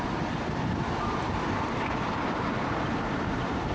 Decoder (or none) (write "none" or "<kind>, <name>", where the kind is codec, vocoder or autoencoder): vocoder, BigVGAN v2